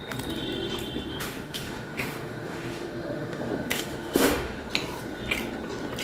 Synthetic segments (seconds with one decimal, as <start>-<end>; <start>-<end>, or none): 1.1-4.7